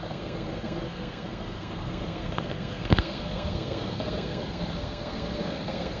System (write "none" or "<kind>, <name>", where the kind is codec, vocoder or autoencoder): codec, SNAC